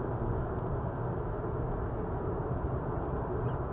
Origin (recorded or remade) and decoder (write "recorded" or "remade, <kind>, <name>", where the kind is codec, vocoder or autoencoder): recorded